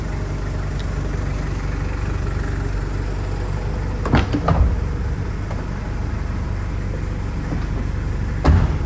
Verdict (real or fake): real